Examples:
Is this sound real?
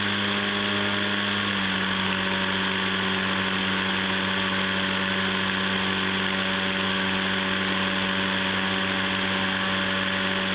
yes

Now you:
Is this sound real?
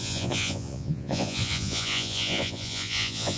no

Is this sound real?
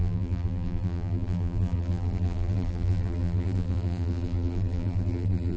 no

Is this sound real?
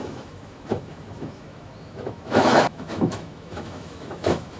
no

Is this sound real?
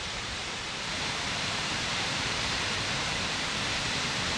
no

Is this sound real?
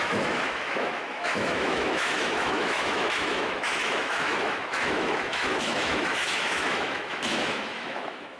no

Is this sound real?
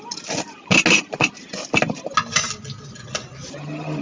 yes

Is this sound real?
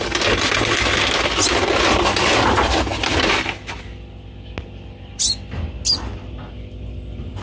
yes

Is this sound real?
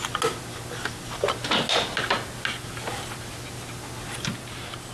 yes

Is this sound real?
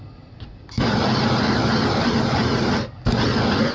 yes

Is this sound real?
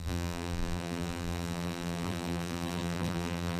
no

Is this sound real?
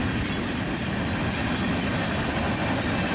yes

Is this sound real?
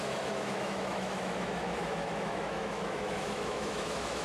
no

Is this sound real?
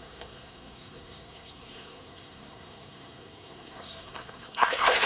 no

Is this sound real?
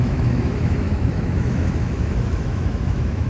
no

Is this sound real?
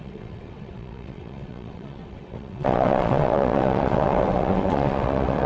no